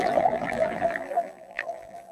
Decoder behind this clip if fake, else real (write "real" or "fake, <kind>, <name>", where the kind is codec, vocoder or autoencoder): fake, vocoder, BigVGAN v2